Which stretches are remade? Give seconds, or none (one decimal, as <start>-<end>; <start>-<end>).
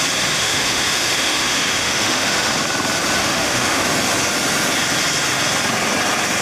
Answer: 0.4-2.5; 3.2-3.8